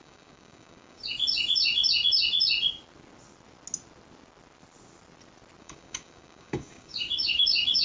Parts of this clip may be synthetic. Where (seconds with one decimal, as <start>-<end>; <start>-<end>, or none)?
0.0-1.0; 5.6-7.8